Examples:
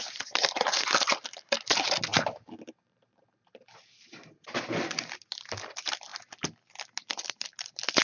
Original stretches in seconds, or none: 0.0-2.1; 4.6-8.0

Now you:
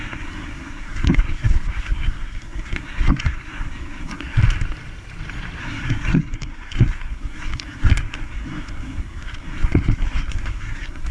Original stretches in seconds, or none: 4.4-5.6

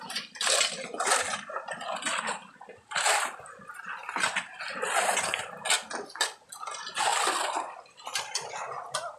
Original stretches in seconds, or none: 0.0-9.2

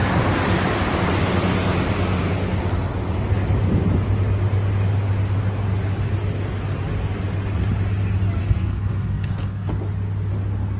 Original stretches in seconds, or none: 0.0-8.4; 9.7-10.8